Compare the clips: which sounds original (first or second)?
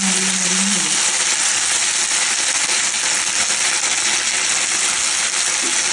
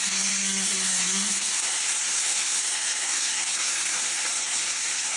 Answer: first